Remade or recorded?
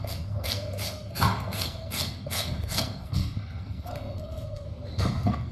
remade